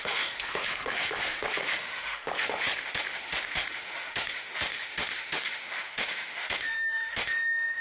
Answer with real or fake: fake